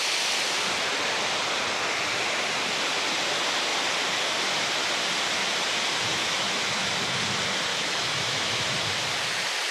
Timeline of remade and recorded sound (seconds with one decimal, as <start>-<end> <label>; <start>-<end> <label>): 0.0-6.1 recorded; 6.1-6.9 remade; 6.9-7.7 recorded; 7.7-8.6 remade; 8.6-9.7 recorded